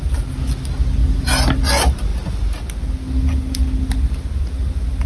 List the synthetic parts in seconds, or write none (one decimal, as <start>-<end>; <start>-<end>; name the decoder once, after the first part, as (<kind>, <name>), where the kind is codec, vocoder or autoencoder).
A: 1.0-1.6 (vocoder, BigVGAN v2)